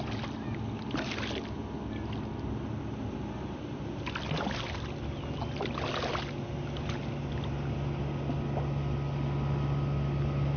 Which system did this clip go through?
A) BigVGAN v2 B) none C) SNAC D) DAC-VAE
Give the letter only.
B